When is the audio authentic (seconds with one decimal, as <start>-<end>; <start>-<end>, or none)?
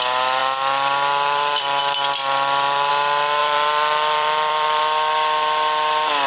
0.0-0.4; 1.8-2.2; 2.9-3.4; 4.8-6.3